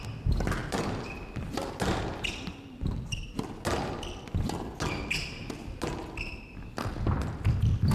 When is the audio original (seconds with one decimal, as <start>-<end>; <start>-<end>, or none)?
0.0-7.9